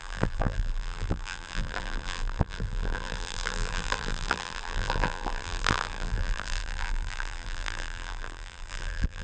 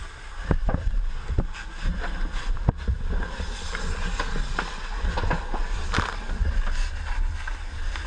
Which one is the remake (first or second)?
first